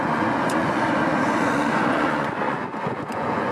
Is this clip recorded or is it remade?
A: remade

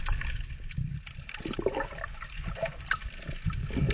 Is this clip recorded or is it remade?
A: remade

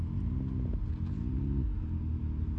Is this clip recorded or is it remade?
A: recorded